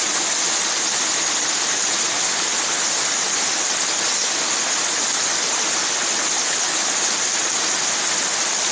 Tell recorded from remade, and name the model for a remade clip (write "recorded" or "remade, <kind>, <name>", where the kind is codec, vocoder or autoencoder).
recorded